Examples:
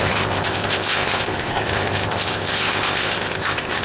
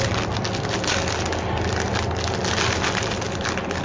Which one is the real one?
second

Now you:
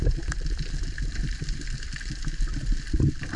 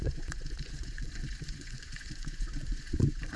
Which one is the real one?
first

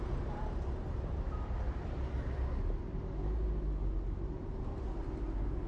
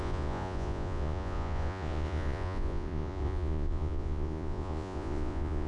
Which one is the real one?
first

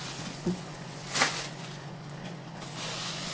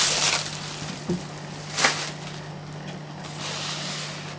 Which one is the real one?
second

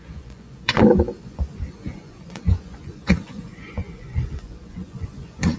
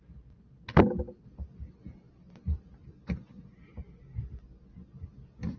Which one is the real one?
second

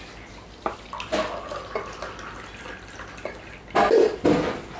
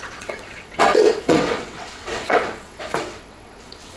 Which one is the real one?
first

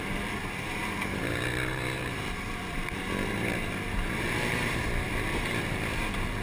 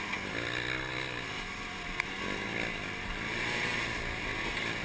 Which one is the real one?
second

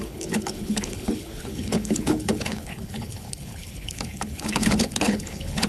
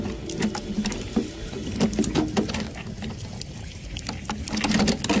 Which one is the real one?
second